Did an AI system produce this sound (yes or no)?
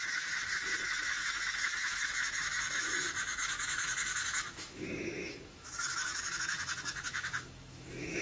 yes